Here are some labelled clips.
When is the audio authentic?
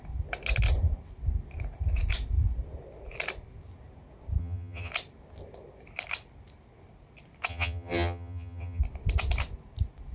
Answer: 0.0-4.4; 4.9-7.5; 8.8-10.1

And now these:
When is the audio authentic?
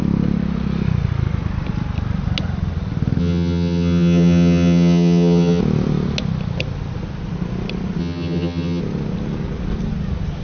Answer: 0.0-3.2; 5.6-8.0; 8.8-10.4